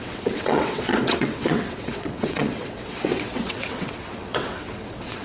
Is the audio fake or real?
fake